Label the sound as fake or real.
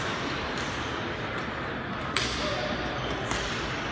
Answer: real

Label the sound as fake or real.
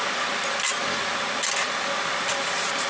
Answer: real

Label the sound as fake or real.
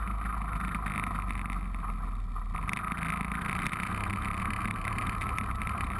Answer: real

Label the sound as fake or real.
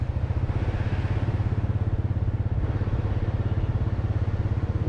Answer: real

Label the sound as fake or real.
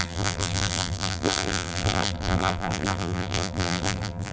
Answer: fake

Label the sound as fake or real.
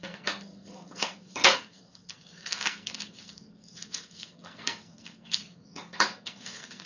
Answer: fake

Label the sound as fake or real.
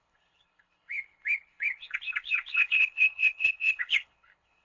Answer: fake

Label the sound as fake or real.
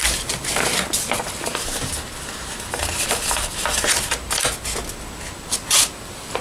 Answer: real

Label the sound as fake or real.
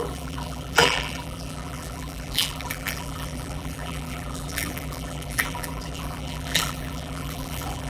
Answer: fake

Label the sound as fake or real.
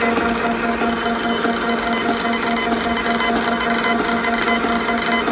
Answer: real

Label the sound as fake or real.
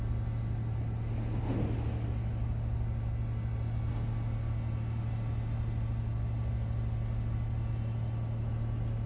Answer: real